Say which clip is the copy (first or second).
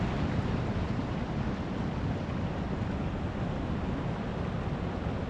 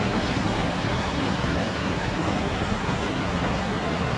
second